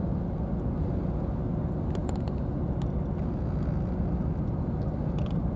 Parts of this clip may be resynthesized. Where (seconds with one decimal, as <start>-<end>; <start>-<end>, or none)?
none